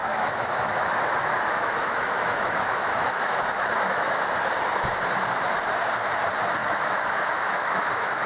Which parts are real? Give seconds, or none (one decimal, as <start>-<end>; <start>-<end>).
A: 4.2-6.6